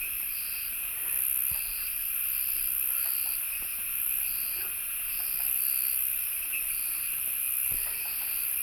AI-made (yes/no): no